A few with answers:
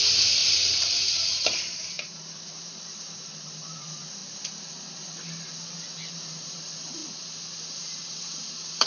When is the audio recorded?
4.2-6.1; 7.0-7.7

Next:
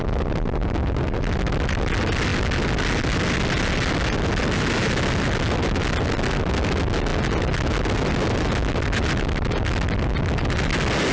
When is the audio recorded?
0.0-11.1

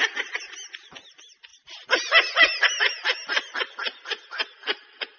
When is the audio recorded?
0.0-5.2

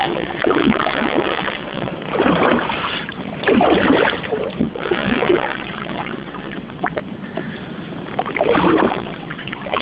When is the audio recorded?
1.9-4.6; 7.0-8.9